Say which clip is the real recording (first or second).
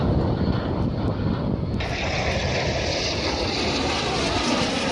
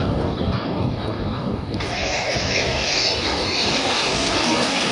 first